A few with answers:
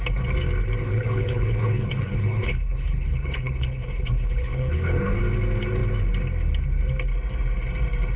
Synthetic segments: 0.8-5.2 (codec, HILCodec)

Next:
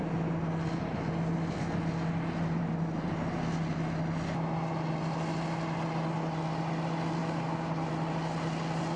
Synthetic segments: none

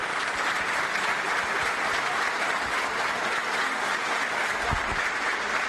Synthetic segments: 0.8-1.9 (vocoder, BigVGAN v2); 3.0-3.4; 5.3-5.7

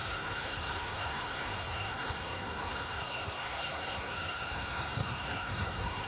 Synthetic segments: 0.0-6.1 (codec, SNAC)